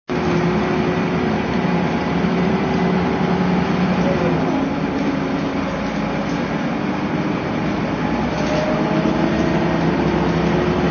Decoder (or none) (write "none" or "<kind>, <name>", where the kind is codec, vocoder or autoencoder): none